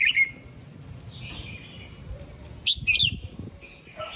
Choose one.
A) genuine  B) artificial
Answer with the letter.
A